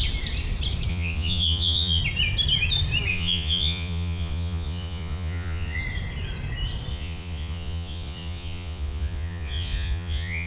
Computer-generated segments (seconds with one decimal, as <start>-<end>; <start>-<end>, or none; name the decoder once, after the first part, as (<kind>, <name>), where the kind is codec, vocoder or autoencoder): 0.9-2.0 (vocoder, Vocos); 3.1-5.8; 6.9-10.5